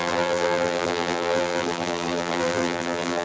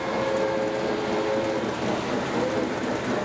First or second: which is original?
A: second